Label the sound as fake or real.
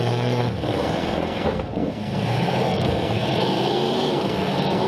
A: fake